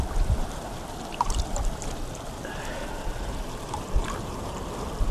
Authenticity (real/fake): real